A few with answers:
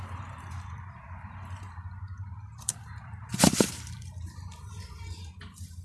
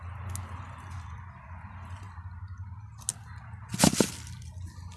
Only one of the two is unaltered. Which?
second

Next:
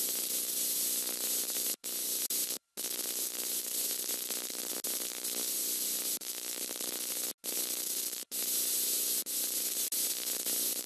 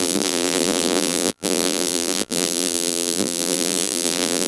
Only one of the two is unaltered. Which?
first